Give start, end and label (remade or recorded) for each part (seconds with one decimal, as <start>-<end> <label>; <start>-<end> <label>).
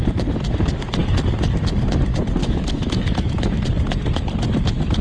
0.0-2.4 recorded; 2.4-3.6 remade; 3.6-5.0 recorded